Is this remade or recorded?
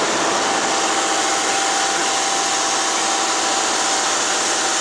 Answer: recorded